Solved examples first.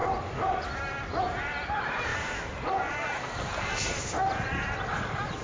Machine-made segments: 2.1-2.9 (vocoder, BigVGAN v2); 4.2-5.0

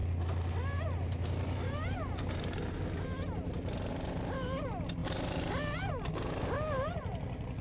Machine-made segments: none

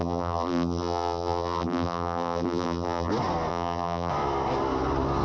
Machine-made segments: 0.0-3.1 (vocoder, BigVGAN v2); 3.5-4.1